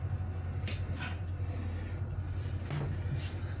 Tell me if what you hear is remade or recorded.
recorded